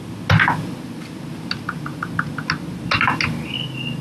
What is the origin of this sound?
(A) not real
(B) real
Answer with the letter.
B